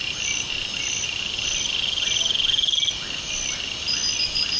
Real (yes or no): yes